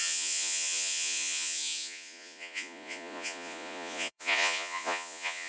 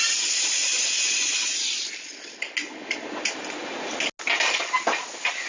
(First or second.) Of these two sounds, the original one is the second